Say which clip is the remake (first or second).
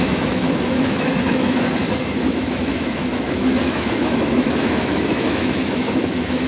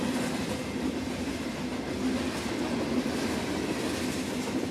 first